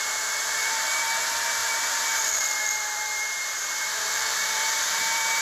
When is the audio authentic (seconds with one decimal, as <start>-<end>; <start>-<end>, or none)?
none